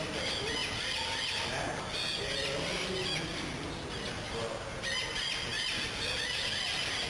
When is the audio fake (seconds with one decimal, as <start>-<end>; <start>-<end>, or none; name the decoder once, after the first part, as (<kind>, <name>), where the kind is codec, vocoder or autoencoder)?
none

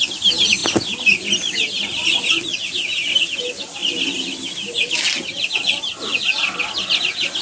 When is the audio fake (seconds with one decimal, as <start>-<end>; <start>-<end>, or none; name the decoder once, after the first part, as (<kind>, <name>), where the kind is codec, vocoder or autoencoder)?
none

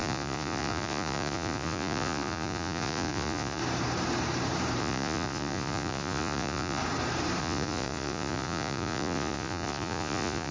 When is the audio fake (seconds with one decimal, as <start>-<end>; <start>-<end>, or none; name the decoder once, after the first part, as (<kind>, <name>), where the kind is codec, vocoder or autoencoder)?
0.0-3.6 (vocoder, Vocos); 4.8-6.8; 7.4-10.5

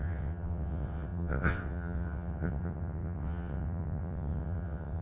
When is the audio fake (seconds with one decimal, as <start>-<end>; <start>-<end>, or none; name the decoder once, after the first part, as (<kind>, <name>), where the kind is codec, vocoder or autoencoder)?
0.0-5.0 (vocoder, WaveNeXt)

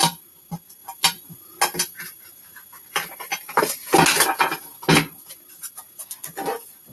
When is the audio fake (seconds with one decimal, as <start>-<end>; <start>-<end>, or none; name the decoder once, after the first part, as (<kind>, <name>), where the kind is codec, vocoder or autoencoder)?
none

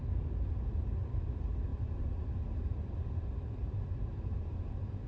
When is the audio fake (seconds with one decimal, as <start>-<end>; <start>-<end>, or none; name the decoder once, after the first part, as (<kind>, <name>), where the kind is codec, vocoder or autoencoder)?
1.7-5.1 (vocoder, BigVGAN v2)